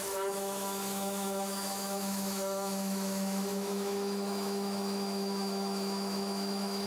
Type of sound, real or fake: fake